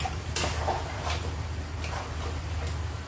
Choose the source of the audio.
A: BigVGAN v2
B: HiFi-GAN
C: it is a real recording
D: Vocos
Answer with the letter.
C